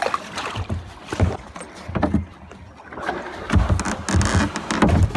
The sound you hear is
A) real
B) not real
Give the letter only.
A